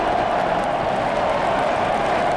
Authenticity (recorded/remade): recorded